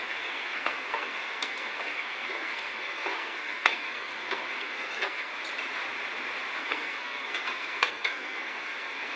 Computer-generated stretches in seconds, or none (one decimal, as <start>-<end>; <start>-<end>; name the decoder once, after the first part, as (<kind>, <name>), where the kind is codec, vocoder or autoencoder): 0.0-5.3 (codec, SNAC); 6.6-9.2

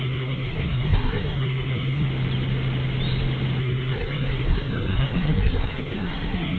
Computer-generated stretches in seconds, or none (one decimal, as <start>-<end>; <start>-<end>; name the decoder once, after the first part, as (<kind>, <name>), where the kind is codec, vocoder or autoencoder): 0.0-2.1 (codec, SNAC); 3.6-6.6

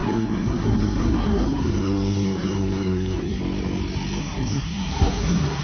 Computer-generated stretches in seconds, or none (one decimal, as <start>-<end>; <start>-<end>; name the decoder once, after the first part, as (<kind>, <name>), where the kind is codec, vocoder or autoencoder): 0.0-3.4 (codec, SNAC); 4.2-5.6